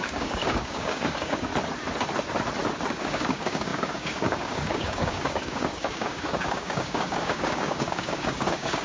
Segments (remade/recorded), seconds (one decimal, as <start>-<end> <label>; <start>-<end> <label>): 0.0-1.5 remade; 1.5-2.9 recorded; 2.9-8.8 remade

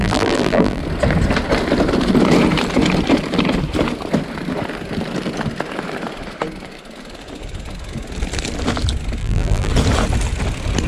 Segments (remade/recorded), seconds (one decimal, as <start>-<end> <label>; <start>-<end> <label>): 0.0-0.8 remade; 0.8-9.2 recorded; 9.2-9.7 remade; 9.7-10.9 recorded